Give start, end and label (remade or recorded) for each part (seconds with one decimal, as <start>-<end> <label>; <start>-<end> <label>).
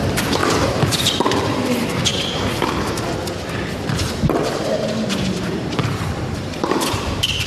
0.0-2.1 remade; 2.1-5.5 recorded; 5.5-7.5 remade